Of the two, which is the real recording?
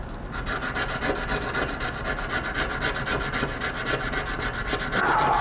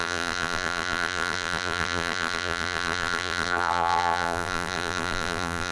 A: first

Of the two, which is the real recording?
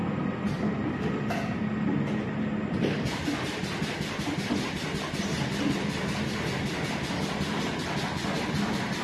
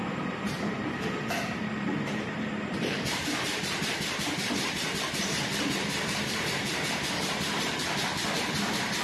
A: first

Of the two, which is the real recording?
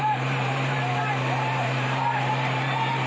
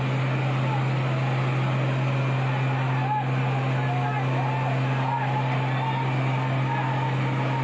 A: second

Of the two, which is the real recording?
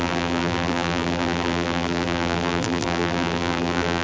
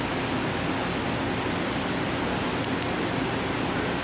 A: second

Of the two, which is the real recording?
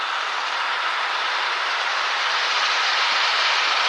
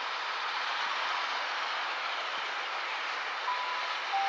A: second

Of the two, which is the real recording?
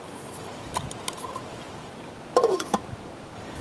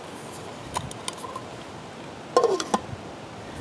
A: second